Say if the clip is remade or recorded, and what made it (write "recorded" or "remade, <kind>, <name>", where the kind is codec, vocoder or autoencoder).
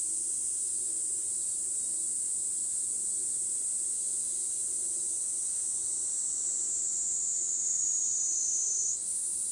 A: recorded